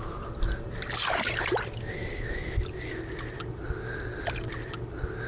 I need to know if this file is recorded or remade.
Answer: recorded